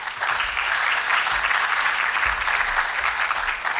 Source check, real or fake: real